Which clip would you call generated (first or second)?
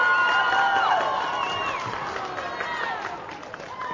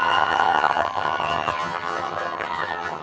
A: second